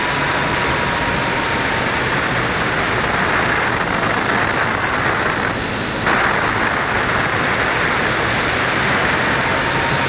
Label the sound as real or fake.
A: real